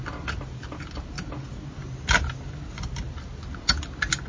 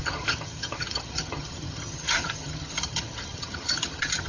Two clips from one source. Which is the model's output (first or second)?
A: second